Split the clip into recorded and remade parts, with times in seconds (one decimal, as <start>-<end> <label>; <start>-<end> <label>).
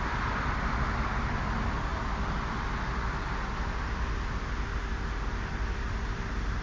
0.0-6.6 recorded